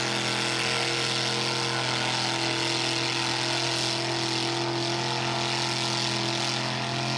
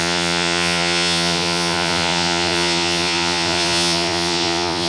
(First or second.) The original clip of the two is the first